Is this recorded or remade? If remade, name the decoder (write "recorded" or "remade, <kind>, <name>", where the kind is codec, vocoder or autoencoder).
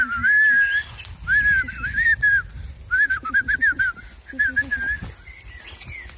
recorded